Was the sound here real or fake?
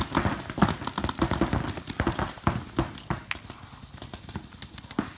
real